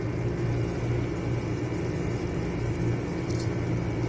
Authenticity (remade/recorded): recorded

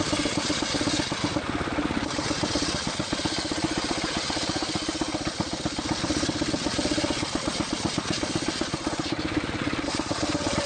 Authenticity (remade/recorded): recorded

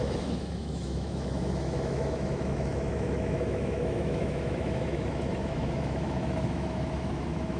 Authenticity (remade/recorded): remade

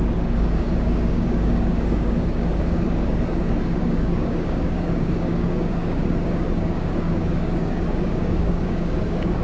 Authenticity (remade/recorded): remade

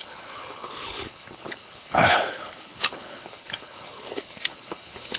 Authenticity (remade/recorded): remade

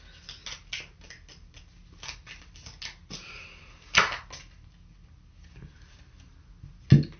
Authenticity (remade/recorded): recorded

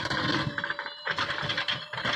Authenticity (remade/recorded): recorded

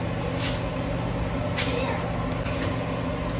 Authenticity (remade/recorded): recorded